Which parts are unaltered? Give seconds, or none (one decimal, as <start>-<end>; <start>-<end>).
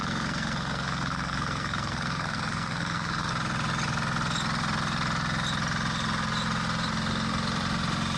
3.3-8.2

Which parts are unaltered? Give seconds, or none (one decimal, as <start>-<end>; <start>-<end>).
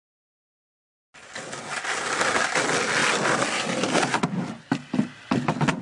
0.0-5.8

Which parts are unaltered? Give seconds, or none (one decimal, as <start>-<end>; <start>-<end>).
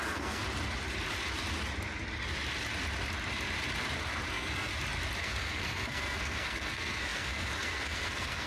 0.4-4.3; 4.7-5.2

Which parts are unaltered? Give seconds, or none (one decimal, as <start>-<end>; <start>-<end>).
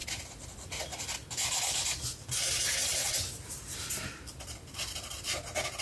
0.0-5.8